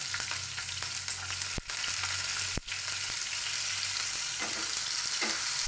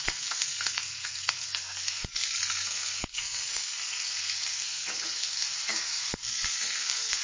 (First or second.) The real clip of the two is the first